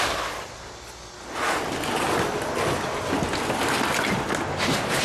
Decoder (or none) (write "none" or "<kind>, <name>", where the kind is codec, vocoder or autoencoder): none